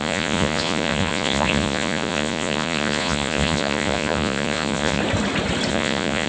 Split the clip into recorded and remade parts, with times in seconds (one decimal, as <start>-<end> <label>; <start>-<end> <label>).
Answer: 0.0-5.0 remade; 5.0-5.7 recorded; 5.7-6.3 remade